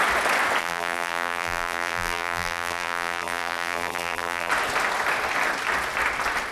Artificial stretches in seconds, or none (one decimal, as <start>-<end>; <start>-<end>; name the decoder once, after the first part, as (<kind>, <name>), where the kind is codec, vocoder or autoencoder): 0.6-4.5 (vocoder, BigVGAN v2)